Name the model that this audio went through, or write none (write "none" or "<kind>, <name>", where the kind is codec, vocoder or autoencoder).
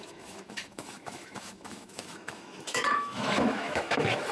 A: autoencoder, DAC-VAE